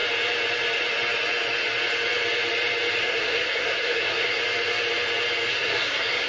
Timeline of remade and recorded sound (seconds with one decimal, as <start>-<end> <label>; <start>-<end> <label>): 0.0-3.0 recorded; 3.0-4.4 remade; 4.4-5.5 recorded; 5.5-6.3 remade

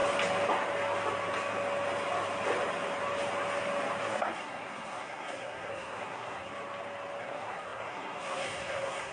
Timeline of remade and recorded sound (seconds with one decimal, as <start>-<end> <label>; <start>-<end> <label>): 0.0-4.0 recorded; 4.0-6.5 remade; 6.5-7.2 recorded; 7.2-9.1 remade

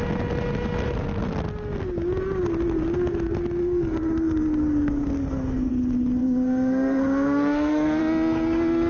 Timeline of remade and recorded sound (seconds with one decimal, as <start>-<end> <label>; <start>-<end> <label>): 0.0-3.6 recorded; 3.6-5.7 remade; 5.7-6.2 recorded; 6.2-8.0 remade; 8.0-8.9 recorded

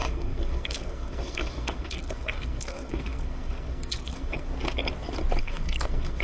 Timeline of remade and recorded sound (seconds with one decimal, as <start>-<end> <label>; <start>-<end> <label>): 0.0-4.5 remade; 4.5-5.4 recorded; 5.4-6.2 remade

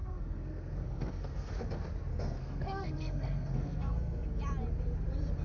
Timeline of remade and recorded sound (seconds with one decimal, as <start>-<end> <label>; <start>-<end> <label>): 0.0-1.5 remade; 1.5-2.1 recorded; 2.1-4.4 remade; 4.4-5.4 recorded

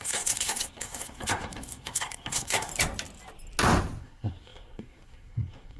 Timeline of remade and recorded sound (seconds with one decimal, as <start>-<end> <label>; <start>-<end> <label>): 0.0-2.7 remade; 2.7-4.0 recorded; 4.0-5.8 remade